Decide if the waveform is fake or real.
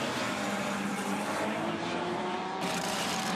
fake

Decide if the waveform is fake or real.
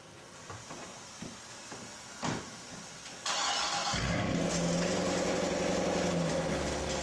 real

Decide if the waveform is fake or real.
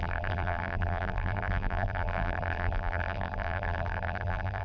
fake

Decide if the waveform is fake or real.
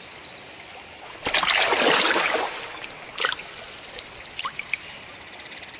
real